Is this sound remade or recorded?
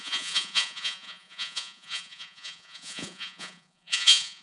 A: remade